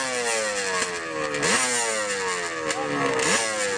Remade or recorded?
recorded